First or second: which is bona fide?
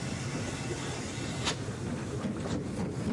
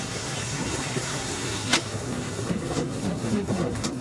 first